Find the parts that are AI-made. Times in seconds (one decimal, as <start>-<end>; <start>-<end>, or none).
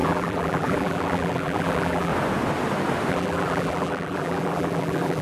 0.0-2.1; 3.1-5.2